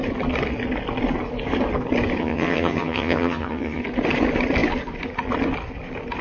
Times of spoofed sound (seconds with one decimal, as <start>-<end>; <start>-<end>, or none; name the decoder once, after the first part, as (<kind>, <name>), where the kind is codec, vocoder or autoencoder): 2.2-3.8 (vocoder, HiFi-GAN)